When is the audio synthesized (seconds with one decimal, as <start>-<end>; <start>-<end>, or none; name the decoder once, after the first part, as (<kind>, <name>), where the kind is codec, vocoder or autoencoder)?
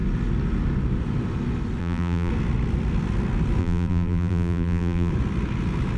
1.8-2.3 (vocoder, BigVGAN v2); 3.6-5.1